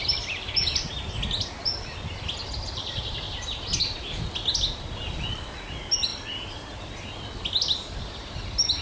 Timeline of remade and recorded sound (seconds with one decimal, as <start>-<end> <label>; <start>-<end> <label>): 0.0-2.4 recorded; 2.4-3.2 remade; 3.2-8.8 recorded

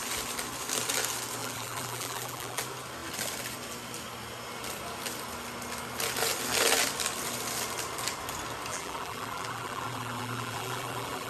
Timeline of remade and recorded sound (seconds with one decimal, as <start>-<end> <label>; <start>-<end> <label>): 0.0-1.4 recorded; 1.4-2.6 remade; 2.6-8.7 recorded; 8.7-11.3 remade

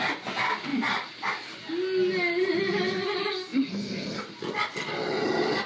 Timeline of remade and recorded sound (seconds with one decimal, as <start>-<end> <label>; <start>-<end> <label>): 0.0-0.7 recorded; 0.7-1.6 remade; 1.6-5.7 recorded